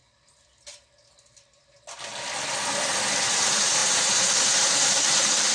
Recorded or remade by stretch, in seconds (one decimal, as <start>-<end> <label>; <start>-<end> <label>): 0.0-3.3 recorded; 3.3-5.5 remade